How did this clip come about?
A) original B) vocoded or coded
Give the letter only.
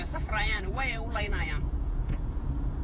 B